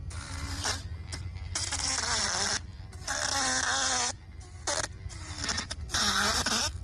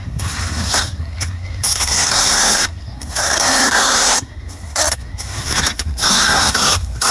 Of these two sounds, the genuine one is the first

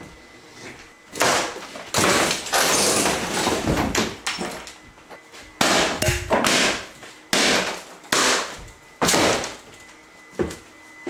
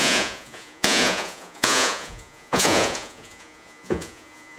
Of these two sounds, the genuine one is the first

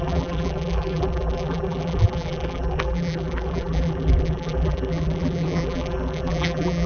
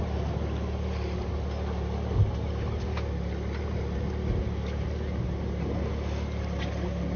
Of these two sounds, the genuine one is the second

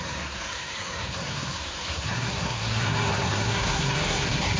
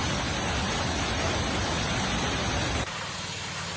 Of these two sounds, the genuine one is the second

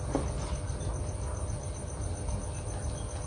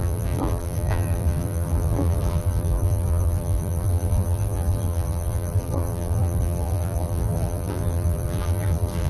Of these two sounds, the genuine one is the first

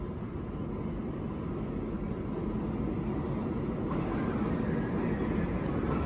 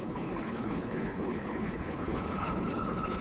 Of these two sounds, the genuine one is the first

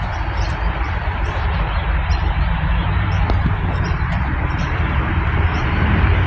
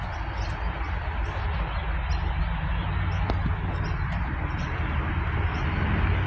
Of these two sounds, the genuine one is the second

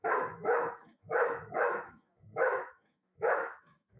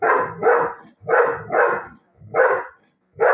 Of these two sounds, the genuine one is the second